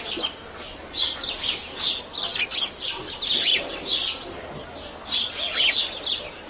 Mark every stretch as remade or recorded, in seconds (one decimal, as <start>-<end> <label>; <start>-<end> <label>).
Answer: 0.0-6.5 recorded